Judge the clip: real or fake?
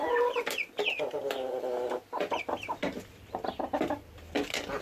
fake